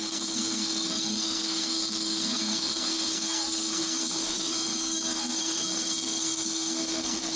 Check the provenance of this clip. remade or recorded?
remade